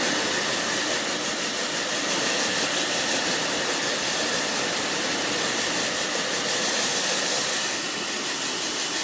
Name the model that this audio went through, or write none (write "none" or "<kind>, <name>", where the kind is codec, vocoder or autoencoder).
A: none